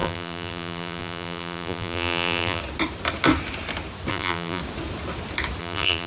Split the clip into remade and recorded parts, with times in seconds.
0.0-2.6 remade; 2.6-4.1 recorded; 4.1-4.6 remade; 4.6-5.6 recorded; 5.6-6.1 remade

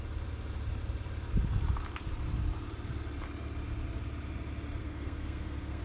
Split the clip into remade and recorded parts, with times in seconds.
0.0-4.8 recorded; 4.8-5.8 remade

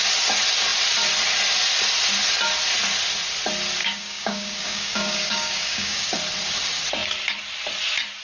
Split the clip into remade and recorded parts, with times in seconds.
0.0-3.8 recorded; 3.8-6.1 remade; 6.1-8.2 recorded

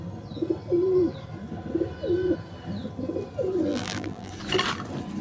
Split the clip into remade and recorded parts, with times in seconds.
0.0-3.7 recorded; 3.7-4.3 remade; 4.3-5.2 recorded

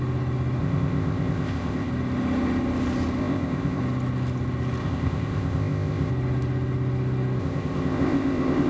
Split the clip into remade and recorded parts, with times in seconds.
0.0-0.6 recorded; 0.6-1.9 remade; 1.9-3.2 recorded; 3.2-3.8 remade; 3.8-4.8 recorded; 4.8-6.1 remade; 6.1-7.4 recorded; 7.4-8.7 remade

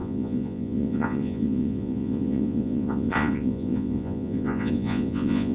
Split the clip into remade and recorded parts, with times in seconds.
0.0-5.5 remade

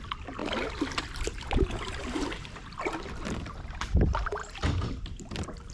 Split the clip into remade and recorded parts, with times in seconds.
0.0-5.7 recorded